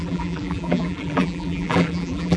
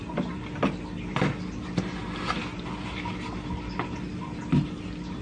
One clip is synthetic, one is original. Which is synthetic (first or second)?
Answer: first